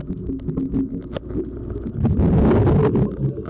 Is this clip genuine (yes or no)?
yes